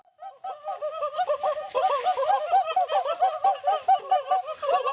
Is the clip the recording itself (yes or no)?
yes